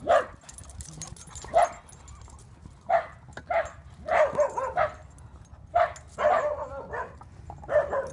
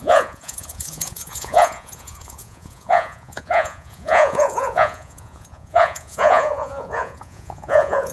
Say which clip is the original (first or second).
first